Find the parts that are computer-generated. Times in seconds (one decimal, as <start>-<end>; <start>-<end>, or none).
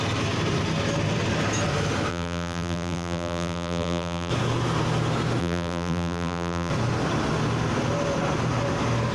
2.1-4.3; 5.4-6.7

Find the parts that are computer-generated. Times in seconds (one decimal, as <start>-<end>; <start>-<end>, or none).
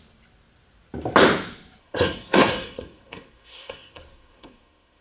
1.8-5.0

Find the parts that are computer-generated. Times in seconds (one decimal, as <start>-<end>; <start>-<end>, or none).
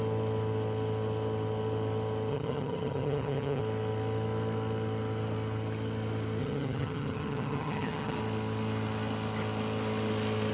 2.3-3.6; 6.4-8.2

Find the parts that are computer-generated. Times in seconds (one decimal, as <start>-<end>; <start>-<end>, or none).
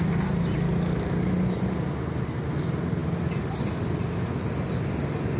none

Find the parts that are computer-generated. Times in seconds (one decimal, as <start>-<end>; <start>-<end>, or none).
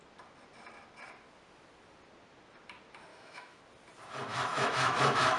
3.1-3.6; 4.3-5.4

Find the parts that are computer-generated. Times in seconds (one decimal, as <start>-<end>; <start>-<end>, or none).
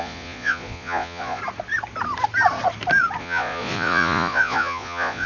0.0-1.4; 3.2-5.3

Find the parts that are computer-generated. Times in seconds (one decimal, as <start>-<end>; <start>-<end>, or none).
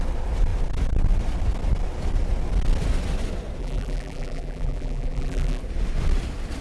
3.6-5.6